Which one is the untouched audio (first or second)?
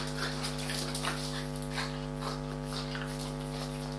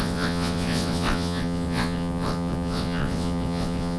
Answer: first